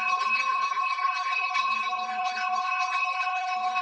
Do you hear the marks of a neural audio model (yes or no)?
yes